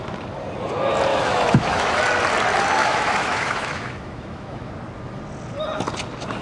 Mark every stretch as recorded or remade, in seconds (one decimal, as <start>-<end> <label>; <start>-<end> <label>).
0.0-1.1 recorded; 1.1-2.0 remade; 2.0-2.8 recorded; 2.8-4.7 remade; 4.7-6.4 recorded